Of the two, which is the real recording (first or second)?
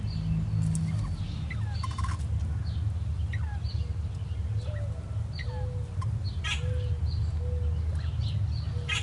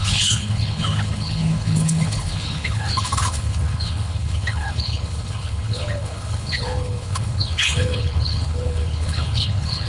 first